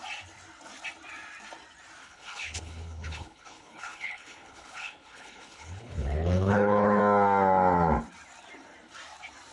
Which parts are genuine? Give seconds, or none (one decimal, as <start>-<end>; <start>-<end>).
0.0-2.0; 7.0-9.5